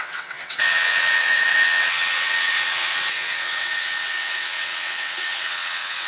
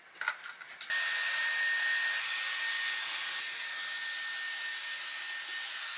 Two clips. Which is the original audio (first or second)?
second